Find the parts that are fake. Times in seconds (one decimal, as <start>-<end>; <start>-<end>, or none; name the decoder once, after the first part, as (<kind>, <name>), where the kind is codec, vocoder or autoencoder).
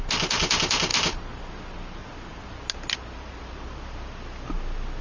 none